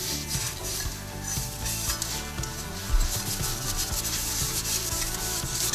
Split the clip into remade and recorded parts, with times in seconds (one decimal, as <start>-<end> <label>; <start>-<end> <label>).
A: 0.0-0.9 remade; 0.9-4.3 recorded; 4.3-5.7 remade